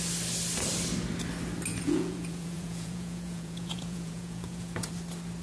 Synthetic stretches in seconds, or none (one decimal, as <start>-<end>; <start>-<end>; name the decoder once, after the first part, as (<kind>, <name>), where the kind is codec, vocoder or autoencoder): 1.7-4.9 (vocoder, Vocos)